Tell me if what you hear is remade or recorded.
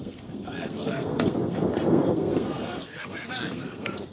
remade